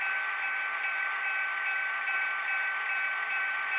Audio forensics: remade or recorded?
recorded